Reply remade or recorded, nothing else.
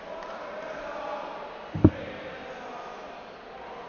recorded